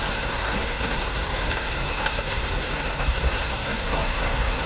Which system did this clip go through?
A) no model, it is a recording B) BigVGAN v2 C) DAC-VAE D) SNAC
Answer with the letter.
D